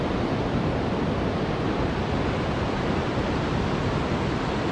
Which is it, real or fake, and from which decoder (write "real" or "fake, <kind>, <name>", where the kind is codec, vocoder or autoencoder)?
real